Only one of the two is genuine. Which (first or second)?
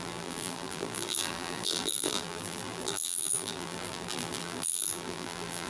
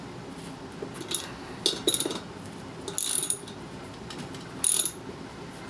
second